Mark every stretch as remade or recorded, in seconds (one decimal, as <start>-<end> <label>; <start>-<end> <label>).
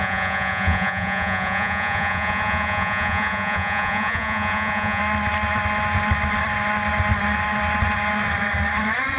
0.0-5.0 remade; 5.0-9.2 recorded